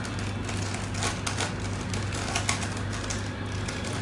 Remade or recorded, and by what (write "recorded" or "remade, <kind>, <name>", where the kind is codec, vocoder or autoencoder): recorded